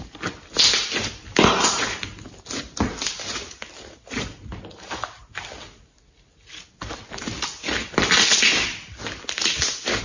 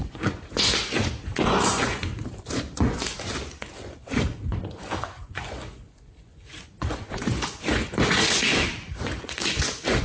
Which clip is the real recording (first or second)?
first